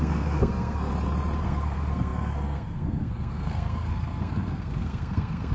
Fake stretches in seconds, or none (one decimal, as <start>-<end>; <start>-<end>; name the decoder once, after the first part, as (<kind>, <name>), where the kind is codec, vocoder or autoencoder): 0.0-0.9 (codec, SNAC); 1.4-5.5